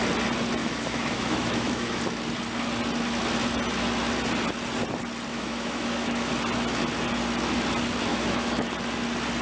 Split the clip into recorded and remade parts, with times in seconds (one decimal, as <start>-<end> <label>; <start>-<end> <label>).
0.0-0.6 recorded; 0.6-2.0 remade; 2.0-5.3 recorded; 5.3-6.3 remade; 6.3-8.1 recorded; 8.1-8.7 remade; 8.7-9.4 recorded